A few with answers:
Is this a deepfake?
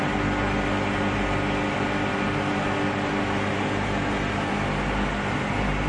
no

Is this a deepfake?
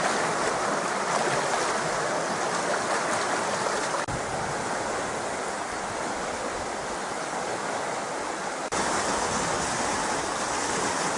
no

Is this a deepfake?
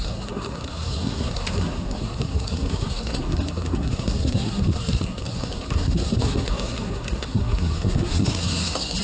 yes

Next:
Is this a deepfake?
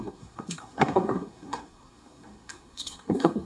yes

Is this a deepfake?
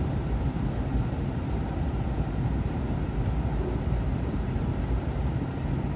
yes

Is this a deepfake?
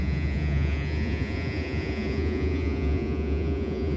yes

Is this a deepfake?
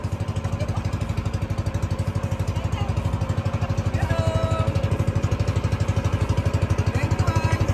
no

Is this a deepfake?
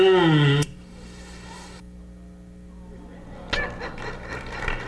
no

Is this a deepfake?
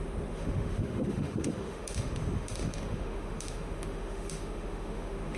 yes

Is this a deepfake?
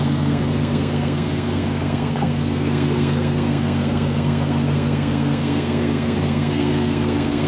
yes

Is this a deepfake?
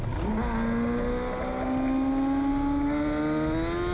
no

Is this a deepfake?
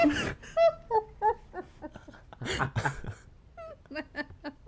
no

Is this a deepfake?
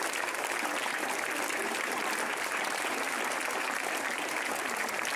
yes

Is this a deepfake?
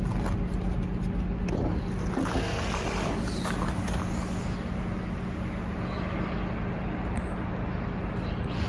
no